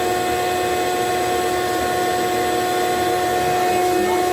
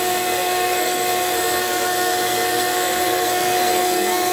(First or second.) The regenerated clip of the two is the second